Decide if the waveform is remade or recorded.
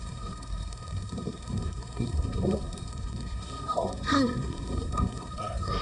remade